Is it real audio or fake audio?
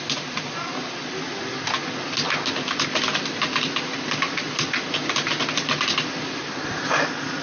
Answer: real